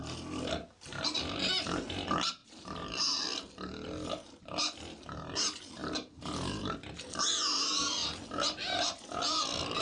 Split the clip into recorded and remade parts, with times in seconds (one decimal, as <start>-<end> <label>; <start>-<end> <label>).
0.0-9.8 recorded

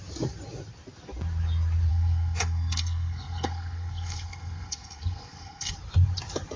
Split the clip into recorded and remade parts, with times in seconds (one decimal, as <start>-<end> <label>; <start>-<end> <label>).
0.0-1.9 recorded; 1.9-5.7 remade; 5.7-6.6 recorded

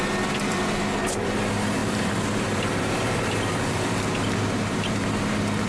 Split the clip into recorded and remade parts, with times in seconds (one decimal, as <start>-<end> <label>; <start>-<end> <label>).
0.0-5.7 remade

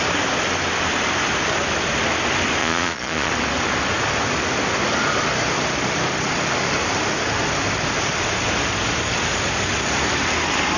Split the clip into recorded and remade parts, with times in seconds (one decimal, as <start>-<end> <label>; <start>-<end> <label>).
0.0-2.6 recorded; 2.6-3.3 remade; 3.3-10.8 recorded

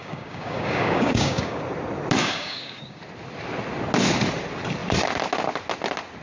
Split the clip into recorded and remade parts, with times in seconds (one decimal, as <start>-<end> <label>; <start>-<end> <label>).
0.0-1.6 remade; 1.6-2.2 recorded; 2.2-3.0 remade; 3.0-6.2 recorded

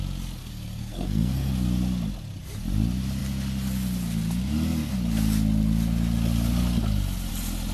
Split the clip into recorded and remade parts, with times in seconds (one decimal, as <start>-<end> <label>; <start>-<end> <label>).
0.0-0.4 recorded; 0.4-1.5 remade; 1.5-7.7 recorded